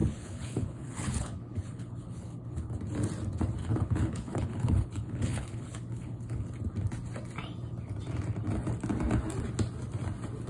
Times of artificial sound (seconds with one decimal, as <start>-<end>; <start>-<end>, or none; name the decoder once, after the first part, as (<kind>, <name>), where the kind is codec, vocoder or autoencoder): 0.0-2.7 (codec, HILCodec); 3.6-6.4